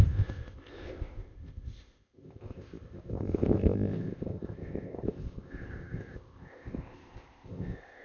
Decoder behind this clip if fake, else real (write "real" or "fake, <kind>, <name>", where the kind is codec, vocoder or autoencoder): fake, codec, ZipCodec